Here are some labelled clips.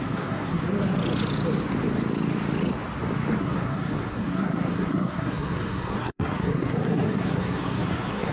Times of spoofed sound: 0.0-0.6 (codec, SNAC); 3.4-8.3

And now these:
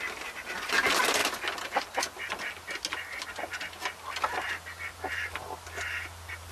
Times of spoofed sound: 0.0-1.2 (vocoder, BigVGAN v2); 5.1-6.5

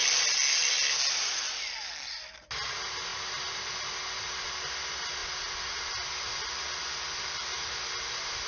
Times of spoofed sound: none